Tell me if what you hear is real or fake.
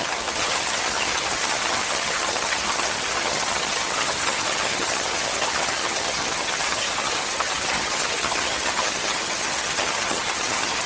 fake